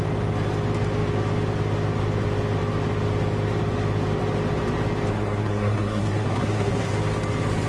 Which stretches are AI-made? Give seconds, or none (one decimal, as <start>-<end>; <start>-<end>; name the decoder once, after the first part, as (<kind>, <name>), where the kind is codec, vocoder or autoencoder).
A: 5.1-6.9 (codec, SNAC)